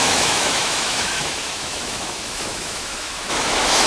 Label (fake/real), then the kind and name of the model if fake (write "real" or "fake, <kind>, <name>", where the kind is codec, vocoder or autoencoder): fake, autoencoder, DAC-VAE